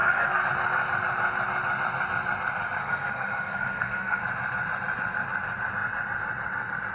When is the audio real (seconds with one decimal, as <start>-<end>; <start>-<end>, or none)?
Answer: 0.5-2.8; 4.2-6.9